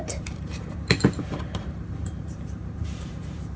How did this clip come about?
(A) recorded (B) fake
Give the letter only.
B